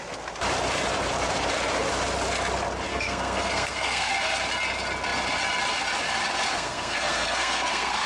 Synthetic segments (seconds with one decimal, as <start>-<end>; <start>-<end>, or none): 2.9-4.1; 6.5-8.1

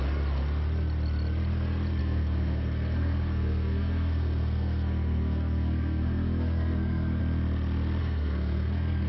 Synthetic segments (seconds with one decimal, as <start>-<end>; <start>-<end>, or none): 2.0-7.2; 8.0-9.1

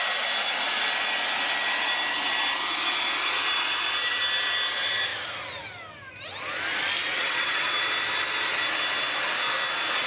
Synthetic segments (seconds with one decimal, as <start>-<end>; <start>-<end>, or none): 7.1-7.7

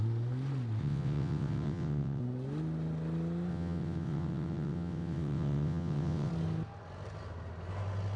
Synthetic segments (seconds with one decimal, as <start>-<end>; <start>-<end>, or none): 0.8-2.2; 3.5-6.3

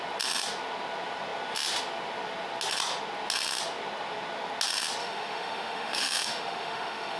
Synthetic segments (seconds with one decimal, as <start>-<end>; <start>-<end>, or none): 5.0-7.2